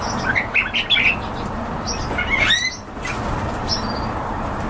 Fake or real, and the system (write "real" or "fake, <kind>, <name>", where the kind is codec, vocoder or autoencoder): real